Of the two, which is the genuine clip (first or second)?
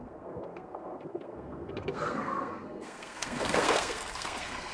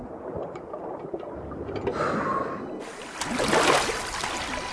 second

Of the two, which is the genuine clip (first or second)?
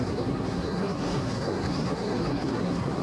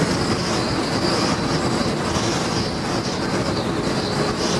second